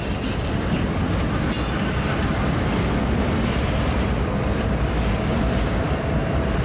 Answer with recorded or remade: recorded